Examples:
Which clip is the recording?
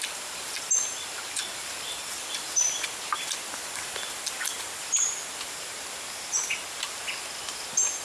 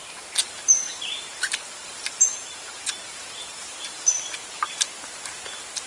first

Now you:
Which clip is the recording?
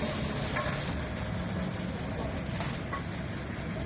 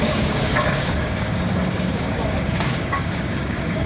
first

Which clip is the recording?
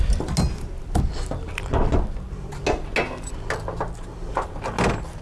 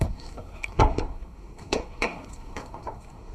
first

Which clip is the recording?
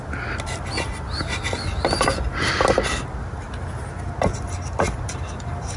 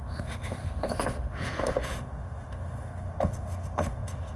first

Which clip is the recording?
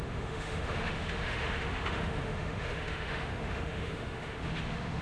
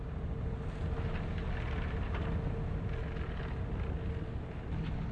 second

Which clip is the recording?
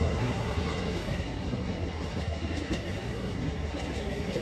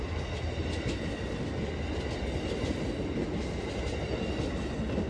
second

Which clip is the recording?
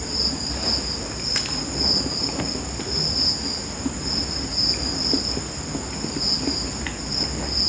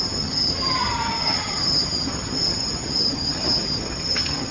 first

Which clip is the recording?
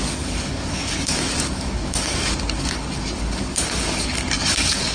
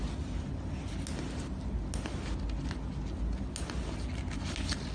second